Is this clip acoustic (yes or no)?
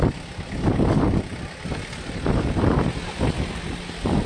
yes